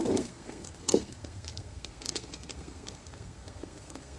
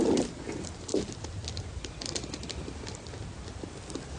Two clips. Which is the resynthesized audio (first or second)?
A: first